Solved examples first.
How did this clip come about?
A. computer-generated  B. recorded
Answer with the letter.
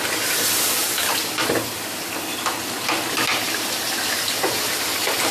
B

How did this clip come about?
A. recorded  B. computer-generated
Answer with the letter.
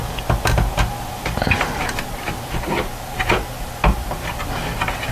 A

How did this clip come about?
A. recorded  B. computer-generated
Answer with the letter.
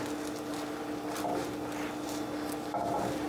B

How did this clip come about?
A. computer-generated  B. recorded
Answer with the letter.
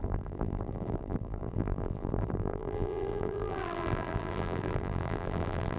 A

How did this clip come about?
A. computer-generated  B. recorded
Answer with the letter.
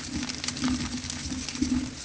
B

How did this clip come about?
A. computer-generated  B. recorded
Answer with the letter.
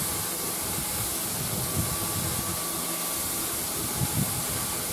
B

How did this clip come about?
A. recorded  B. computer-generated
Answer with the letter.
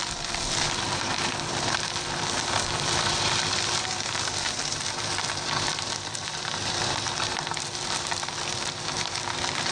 B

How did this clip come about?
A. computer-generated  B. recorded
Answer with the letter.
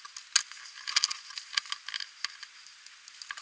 B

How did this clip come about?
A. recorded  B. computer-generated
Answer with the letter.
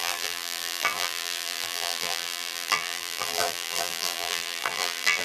B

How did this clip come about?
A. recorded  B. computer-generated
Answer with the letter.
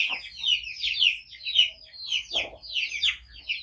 A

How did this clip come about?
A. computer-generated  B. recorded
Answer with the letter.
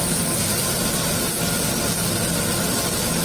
B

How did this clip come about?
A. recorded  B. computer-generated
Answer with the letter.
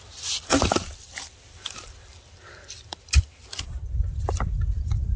B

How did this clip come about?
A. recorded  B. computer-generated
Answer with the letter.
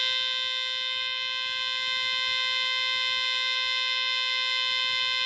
A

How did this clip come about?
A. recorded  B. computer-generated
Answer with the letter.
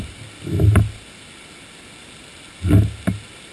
A